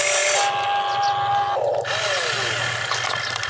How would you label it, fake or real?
real